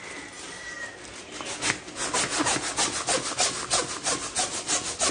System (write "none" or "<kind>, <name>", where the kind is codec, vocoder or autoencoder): none